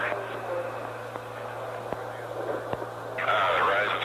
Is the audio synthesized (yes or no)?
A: no